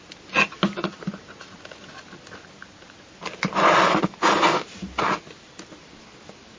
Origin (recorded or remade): recorded